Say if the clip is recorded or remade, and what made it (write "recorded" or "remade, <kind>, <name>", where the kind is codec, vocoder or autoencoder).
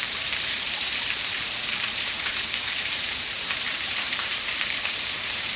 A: remade, vocoder, BigVGAN v2